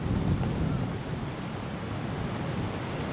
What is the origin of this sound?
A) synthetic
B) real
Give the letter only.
B